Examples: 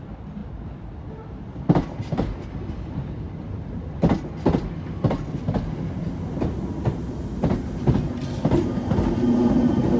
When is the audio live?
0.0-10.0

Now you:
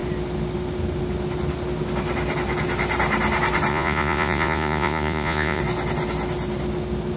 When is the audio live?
0.0-3.7; 5.6-7.2